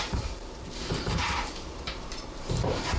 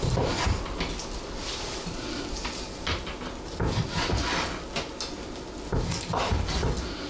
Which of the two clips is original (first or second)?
second